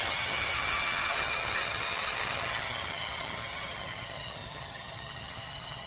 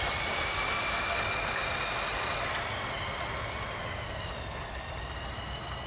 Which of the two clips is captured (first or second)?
second